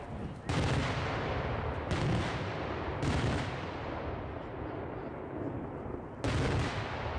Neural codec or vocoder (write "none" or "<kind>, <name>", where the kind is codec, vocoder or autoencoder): none